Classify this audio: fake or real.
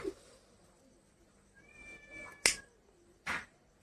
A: real